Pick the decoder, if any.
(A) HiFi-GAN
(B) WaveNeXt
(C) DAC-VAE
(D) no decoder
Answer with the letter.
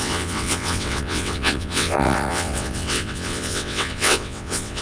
B